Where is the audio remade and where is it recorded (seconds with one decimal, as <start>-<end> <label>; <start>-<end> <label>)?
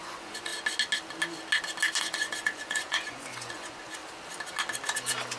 0.0-0.5 remade; 0.5-2.0 recorded; 2.0-4.0 remade; 4.0-5.4 recorded